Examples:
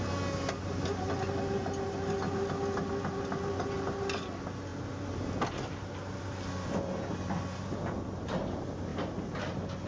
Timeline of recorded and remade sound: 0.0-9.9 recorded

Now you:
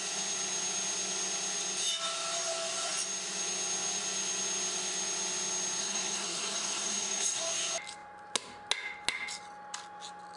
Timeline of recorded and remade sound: 0.0-5.8 recorded; 5.8-7.4 remade; 7.4-10.4 recorded